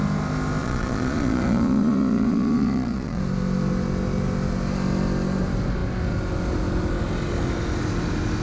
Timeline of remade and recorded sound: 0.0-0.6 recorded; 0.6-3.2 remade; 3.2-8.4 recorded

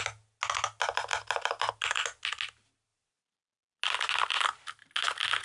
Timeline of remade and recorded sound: 0.0-5.4 recorded

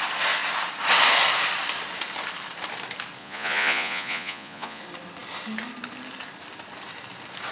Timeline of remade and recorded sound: 0.0-3.2 recorded; 3.2-4.8 remade; 4.8-7.5 recorded

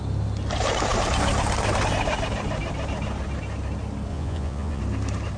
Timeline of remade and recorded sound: 0.0-4.1 recorded; 4.1-4.8 remade; 4.8-5.4 recorded

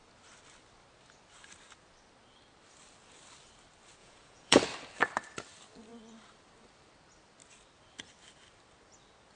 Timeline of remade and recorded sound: 0.0-4.0 recorded; 4.0-4.6 remade; 4.6-9.4 recorded

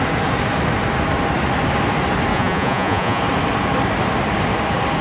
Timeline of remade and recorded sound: 0.0-2.3 recorded; 2.3-3.2 remade; 3.2-5.0 recorded